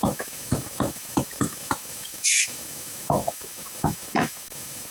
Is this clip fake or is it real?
fake